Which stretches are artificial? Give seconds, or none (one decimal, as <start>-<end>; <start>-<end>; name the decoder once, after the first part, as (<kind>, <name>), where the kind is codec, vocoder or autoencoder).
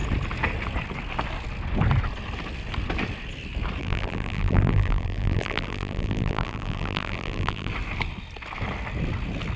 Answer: 3.8-7.7 (vocoder, BigVGAN v2)